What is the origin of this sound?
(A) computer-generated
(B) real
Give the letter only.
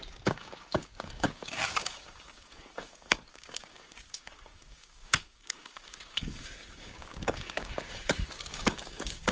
A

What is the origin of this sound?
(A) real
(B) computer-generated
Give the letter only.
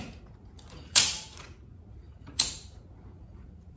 B